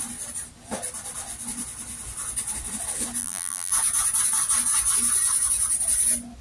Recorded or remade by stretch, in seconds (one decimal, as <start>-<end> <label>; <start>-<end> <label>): 0.0-3.2 recorded; 3.2-3.7 remade; 3.7-6.4 recorded